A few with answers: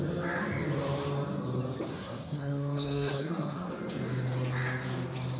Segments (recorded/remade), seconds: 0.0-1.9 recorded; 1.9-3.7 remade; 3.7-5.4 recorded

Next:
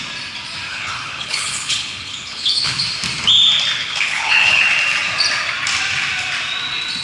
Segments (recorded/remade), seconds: 0.0-0.7 recorded; 0.7-2.8 remade; 2.8-3.8 recorded; 3.8-4.6 remade; 4.6-7.0 recorded